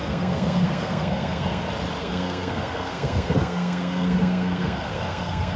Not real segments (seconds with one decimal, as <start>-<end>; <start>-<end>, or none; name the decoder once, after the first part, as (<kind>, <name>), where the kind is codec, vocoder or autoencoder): 0.0-1.6 (codec, SNAC); 2.0-5.6